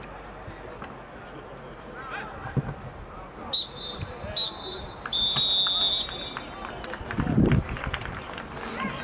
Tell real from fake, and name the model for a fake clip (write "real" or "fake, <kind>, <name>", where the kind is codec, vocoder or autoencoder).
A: real